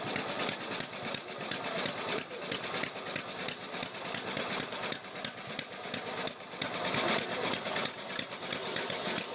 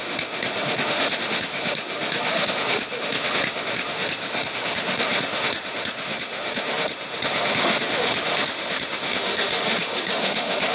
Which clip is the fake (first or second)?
second